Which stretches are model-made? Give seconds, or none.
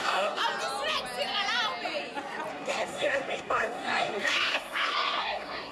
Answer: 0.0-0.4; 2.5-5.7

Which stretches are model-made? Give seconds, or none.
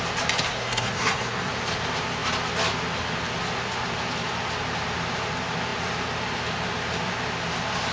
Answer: 0.5-1.5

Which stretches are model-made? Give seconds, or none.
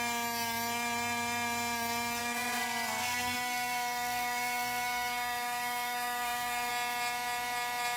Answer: 2.2-6.7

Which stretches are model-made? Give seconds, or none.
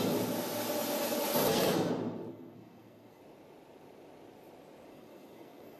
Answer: 1.4-1.9; 2.3-3.2; 4.9-5.8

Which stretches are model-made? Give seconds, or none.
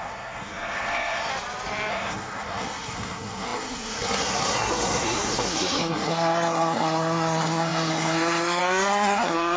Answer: 0.0-1.3; 1.9-9.6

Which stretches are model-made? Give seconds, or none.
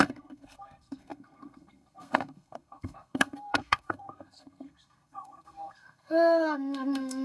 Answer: 0.0-7.2